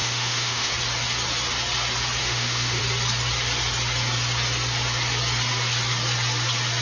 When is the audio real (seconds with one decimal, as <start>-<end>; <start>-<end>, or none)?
0.7-2.2; 2.8-6.8